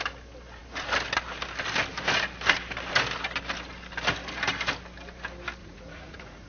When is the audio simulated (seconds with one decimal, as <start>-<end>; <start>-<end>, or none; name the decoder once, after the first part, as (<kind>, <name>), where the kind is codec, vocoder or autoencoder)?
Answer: 5.6-6.5 (vocoder, Vocos)